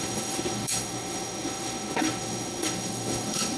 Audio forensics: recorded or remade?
remade